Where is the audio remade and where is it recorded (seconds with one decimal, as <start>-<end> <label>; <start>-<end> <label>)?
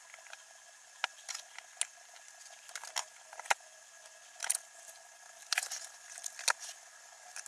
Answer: 0.0-7.5 recorded